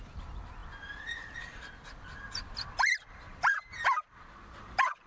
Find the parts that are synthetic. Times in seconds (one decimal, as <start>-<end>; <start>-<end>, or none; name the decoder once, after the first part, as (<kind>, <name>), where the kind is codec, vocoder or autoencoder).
none